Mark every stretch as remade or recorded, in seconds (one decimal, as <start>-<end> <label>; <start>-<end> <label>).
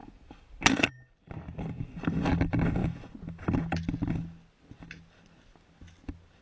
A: 0.0-6.4 recorded